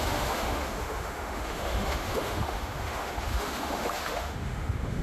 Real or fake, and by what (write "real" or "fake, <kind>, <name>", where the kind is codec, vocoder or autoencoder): fake, autoencoder, DAC-VAE